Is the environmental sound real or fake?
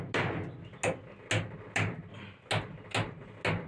real